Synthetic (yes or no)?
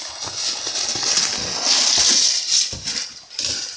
no